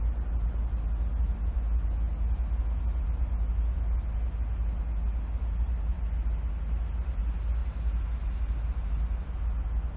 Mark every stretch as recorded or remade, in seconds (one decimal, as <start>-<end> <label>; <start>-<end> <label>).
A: 0.0-10.0 recorded